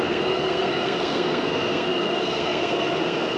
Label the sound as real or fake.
fake